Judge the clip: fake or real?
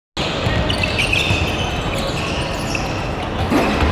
real